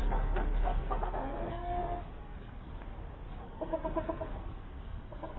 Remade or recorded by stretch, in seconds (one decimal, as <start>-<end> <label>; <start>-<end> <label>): 0.0-2.7 remade; 2.7-3.3 recorded; 3.3-5.4 remade